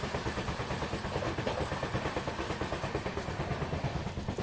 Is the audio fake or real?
real